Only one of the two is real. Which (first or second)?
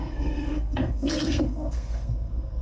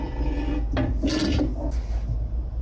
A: second